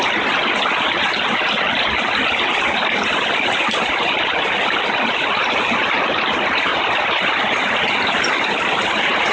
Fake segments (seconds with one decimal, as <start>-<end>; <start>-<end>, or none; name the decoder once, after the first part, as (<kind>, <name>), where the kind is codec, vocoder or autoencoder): none